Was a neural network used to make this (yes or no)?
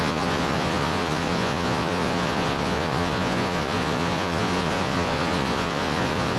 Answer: yes